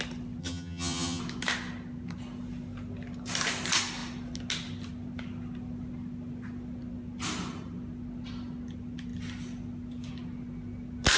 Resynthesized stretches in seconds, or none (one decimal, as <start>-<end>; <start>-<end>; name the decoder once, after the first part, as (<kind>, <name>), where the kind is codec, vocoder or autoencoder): 0.4-1.2 (vocoder, HiFi-GAN)